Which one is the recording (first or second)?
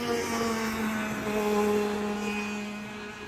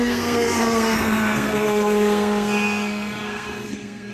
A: first